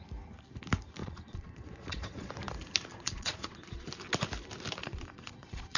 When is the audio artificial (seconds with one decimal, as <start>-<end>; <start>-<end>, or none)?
1.0-2.3; 2.9-3.9; 4.8-5.8